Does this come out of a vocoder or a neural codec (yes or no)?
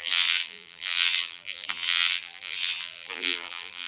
yes